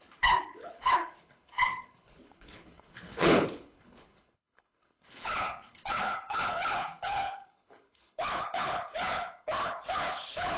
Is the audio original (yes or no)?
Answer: no